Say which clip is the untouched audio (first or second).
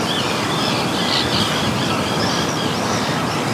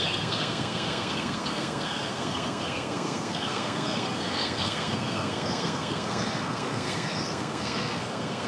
first